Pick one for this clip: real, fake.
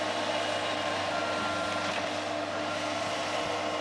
real